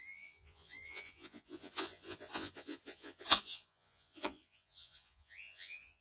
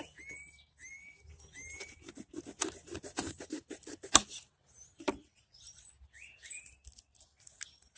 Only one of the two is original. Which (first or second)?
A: second